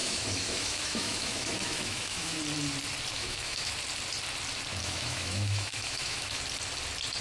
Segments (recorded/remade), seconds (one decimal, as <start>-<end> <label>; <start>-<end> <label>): 0.0-2.4 remade; 2.4-3.1 recorded; 3.1-3.7 remade; 3.7-4.8 recorded; 4.8-6.4 remade; 6.4-7.2 recorded